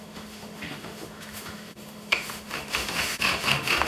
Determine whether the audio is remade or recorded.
remade